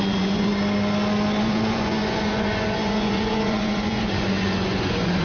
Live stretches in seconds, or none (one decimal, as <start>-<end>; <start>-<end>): 0.5-1.4